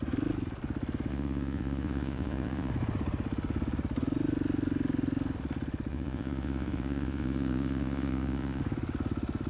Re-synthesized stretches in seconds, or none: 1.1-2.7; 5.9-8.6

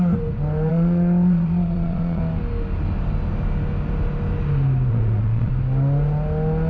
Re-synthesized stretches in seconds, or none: 0.7-2.2; 4.9-5.5

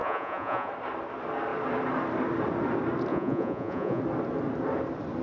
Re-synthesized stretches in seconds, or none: 0.0-0.7; 3.1-4.0

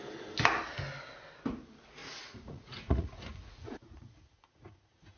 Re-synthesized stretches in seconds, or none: 2.0-5.2

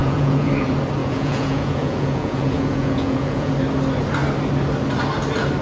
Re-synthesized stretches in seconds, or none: 0.0-0.5; 1.0-3.5

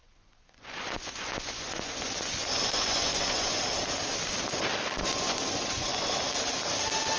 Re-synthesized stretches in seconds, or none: 0.0-3.6; 5.0-6.1

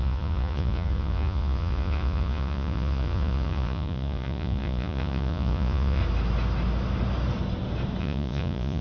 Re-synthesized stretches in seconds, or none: 0.0-6.0; 8.0-8.8

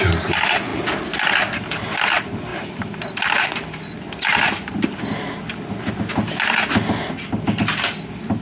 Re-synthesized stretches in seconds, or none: none